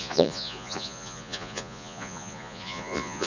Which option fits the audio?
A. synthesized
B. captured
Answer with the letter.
A